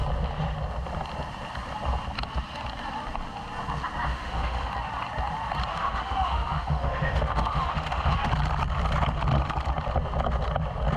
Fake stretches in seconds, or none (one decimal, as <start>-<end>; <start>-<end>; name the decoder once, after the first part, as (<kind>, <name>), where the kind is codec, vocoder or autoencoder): 4.1-4.7 (autoencoder, DAC-VAE); 5.7-8.3